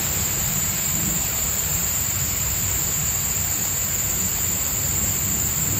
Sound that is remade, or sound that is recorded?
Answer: remade